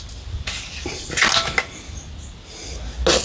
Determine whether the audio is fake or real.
real